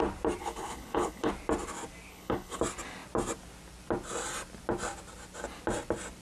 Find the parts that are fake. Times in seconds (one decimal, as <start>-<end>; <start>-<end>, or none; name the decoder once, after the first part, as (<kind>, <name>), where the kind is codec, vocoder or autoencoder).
0.4-1.3 (codec, HILCodec); 2.1-2.6